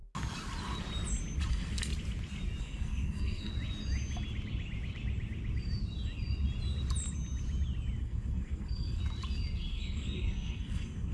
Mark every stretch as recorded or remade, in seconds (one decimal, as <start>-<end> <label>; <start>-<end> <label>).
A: 0.0-1.5 recorded; 1.5-1.9 remade; 1.9-2.6 recorded; 2.6-3.5 remade; 3.5-8.0 recorded; 8.0-9.0 remade; 9.0-9.7 recorded; 9.7-11.1 remade